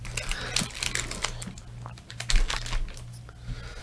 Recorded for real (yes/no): yes